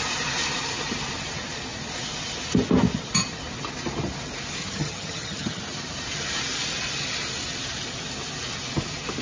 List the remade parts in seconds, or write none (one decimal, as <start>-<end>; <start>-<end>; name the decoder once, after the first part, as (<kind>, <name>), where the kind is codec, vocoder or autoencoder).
4.6-5.6 (vocoder, HiFi-GAN)